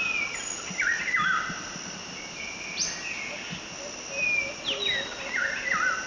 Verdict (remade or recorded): recorded